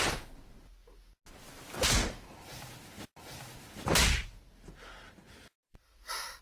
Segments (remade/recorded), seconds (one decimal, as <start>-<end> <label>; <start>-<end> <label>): 0.0-6.4 recorded